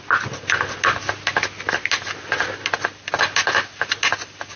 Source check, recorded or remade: recorded